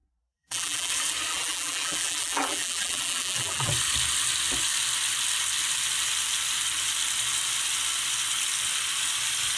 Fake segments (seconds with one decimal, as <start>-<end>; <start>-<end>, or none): 0.0-0.9; 1.3-3.7

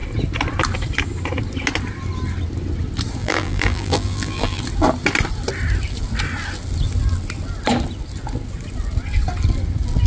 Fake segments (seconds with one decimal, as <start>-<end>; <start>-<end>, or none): 3.2-4.6

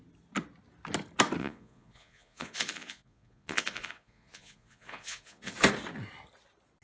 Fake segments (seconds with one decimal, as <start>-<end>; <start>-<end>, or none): 1.4-5.5

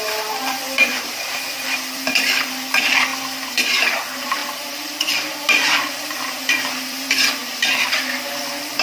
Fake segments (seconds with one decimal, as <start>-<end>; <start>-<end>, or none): 0.0-3.1; 3.9-7.4; 8.4-8.8